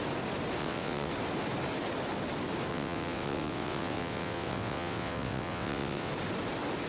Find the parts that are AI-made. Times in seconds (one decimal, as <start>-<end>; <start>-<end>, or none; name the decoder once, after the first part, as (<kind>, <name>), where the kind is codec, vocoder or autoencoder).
0.6-1.1 (vocoder, WaveNeXt); 2.7-6.1